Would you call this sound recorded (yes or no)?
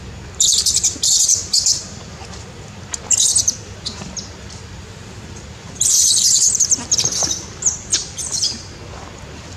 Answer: no